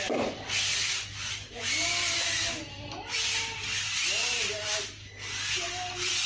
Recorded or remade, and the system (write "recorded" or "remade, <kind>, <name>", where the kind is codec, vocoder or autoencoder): recorded